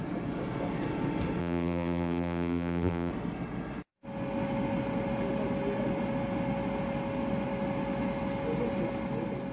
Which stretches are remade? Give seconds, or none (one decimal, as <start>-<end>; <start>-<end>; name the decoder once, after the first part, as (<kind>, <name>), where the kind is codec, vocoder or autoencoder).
1.4-3.1 (vocoder, BigVGAN v2)